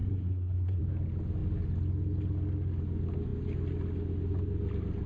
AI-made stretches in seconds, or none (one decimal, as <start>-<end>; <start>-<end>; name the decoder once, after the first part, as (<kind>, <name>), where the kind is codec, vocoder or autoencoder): 0.0-0.8 (codec, SNAC)